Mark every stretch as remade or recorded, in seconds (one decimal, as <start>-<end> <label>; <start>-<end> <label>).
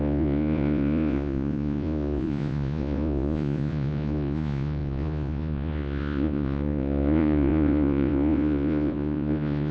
0.0-9.7 remade